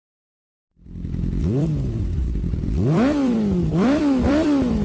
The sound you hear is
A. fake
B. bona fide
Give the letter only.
A